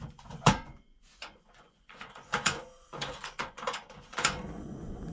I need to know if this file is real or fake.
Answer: fake